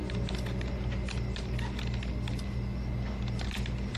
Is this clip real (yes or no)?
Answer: yes